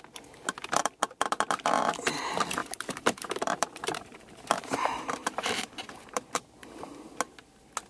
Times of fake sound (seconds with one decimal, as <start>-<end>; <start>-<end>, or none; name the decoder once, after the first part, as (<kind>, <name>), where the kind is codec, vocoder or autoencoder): 0.8-2.2 (vocoder, BigVGAN v2); 2.6-6.4